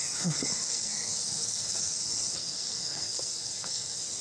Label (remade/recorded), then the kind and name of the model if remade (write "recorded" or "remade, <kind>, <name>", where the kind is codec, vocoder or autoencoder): remade, codec, SNAC